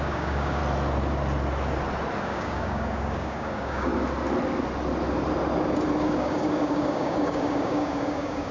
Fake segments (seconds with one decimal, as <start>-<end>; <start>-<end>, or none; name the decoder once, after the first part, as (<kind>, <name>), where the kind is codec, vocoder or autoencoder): 0.0-0.6 (codec, DAC); 2.2-3.9; 6.0-8.5